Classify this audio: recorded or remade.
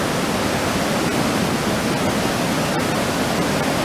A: recorded